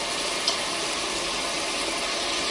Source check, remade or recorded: recorded